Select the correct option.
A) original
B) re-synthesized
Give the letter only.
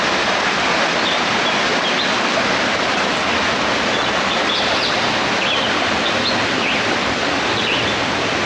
A